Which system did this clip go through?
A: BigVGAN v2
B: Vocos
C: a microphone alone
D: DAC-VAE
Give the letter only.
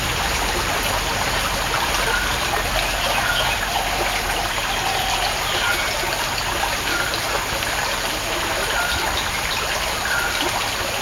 C